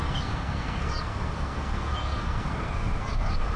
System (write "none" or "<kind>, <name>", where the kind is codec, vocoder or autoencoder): codec, SNAC